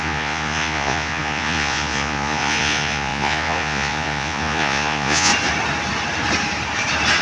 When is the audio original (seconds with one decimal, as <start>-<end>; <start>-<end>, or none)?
5.3-7.2